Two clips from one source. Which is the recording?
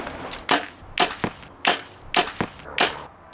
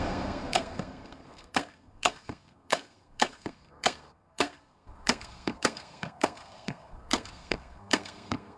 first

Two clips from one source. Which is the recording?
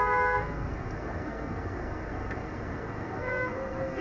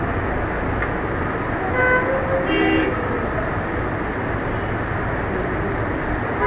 second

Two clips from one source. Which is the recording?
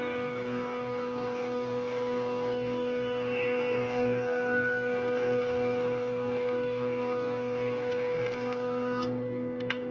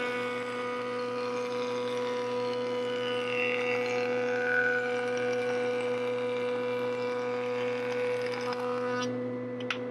second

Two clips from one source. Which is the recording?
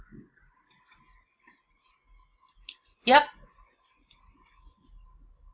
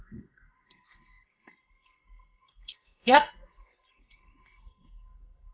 first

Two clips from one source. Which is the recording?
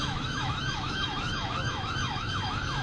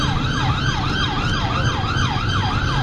second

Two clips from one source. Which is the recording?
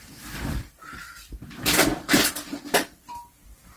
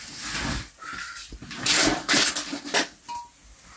second